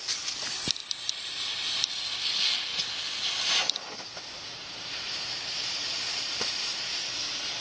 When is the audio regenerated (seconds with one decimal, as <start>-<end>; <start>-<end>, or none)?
0.8-1.9; 2.7-6.9